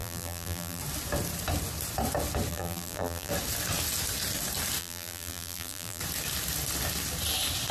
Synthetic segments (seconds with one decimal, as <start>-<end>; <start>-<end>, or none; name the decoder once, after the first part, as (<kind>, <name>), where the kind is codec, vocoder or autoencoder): 0.0-0.8 (vocoder, BigVGAN v2); 2.5-3.3; 4.8-6.0